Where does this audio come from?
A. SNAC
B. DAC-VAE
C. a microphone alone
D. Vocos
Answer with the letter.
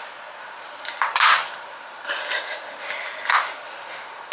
C